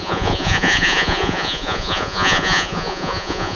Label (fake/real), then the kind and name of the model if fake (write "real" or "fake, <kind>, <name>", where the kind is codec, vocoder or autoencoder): fake, vocoder, Vocos